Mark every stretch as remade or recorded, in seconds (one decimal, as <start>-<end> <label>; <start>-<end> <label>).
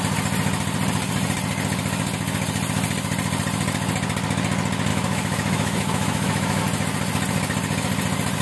0.0-4.9 recorded; 4.9-6.6 remade; 6.6-8.4 recorded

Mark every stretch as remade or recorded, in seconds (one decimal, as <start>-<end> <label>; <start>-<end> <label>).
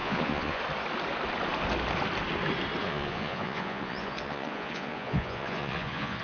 0.0-0.6 remade; 0.6-2.8 recorded; 2.8-6.2 remade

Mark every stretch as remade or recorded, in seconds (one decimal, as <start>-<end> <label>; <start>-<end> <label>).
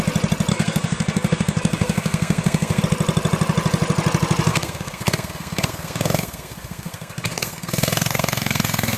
0.0-0.5 recorded; 0.5-2.8 remade; 2.8-4.5 recorded; 4.5-9.0 remade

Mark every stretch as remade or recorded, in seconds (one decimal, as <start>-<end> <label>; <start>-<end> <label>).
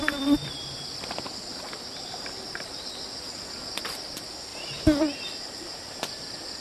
0.0-6.6 recorded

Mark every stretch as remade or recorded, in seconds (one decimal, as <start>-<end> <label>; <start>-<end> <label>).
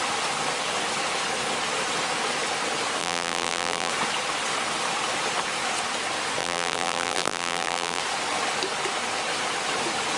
0.0-3.0 recorded; 3.0-3.9 remade; 3.9-6.4 recorded; 6.4-8.0 remade; 8.0-10.2 recorded